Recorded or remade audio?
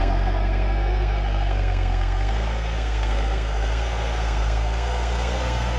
remade